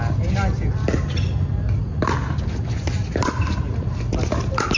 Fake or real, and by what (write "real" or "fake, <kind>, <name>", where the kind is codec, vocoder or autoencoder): real